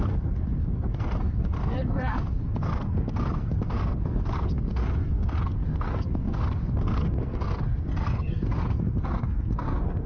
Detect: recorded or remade remade